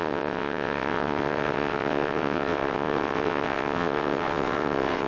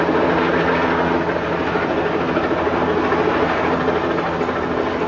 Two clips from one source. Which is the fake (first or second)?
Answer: first